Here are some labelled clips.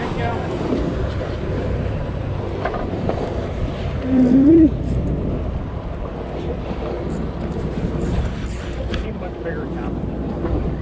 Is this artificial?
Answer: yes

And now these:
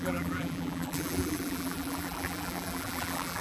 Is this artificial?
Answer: yes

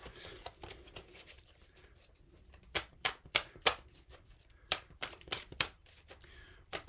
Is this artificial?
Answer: yes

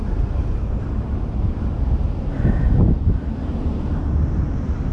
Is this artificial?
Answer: yes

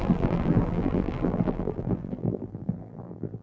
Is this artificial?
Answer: yes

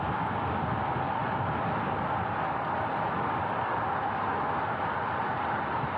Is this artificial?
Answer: no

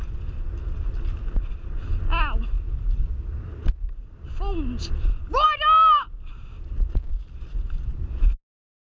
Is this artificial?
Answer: no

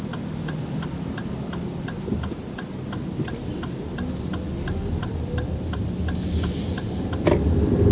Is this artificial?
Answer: no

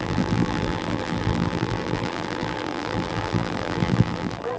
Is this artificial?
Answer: yes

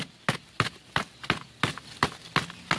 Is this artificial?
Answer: no